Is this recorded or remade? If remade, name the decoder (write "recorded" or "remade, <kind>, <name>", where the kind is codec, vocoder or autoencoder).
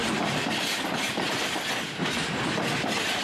recorded